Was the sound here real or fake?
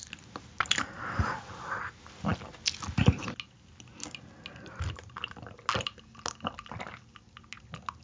real